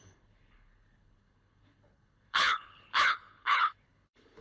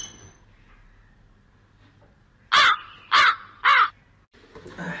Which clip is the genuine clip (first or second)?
second